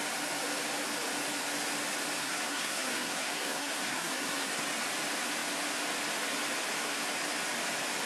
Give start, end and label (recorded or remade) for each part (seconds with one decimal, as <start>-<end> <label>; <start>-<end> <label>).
0.0-2.2 recorded; 2.2-4.6 remade; 4.6-8.1 recorded